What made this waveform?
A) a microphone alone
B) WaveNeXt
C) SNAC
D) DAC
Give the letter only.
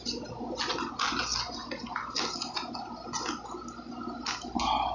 A